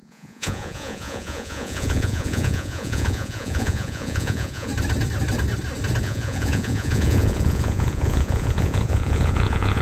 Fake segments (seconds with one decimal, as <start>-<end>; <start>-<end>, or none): 0.0-4.7; 6.0-9.8